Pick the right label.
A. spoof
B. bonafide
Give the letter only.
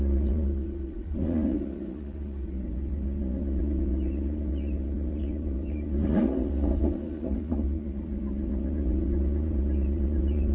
A